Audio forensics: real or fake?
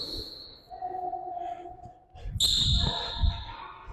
real